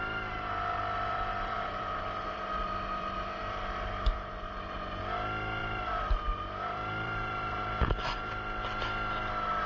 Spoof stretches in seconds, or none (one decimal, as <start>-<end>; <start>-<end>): 0.7-5.0; 5.6-7.6